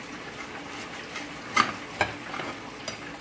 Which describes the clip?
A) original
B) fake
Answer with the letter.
A